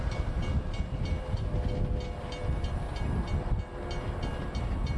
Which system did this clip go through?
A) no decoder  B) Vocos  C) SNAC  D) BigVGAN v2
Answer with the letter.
A